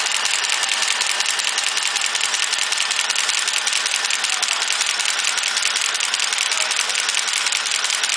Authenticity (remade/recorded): recorded